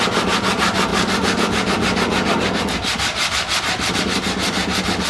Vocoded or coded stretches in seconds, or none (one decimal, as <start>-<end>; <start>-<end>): 0.9-4.0